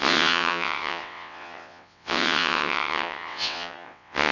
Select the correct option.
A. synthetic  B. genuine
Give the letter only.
A